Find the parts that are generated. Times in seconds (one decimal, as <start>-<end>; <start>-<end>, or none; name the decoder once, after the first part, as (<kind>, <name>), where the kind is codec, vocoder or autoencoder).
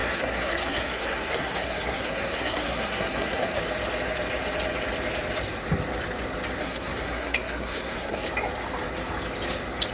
0.0-3.6 (codec, SNAC); 6.6-8.3